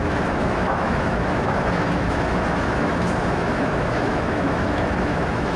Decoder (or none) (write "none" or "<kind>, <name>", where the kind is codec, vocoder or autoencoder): autoencoder, DAC-VAE